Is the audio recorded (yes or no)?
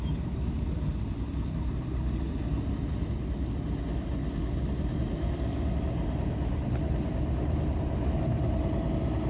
yes